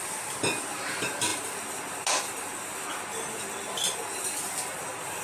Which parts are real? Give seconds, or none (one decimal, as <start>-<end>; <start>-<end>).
0.0-5.2